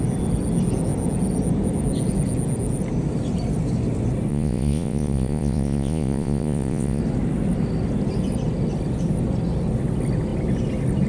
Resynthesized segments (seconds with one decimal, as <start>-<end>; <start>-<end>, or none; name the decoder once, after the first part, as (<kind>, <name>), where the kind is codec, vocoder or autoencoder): 4.3-7.0 (vocoder, Vocos)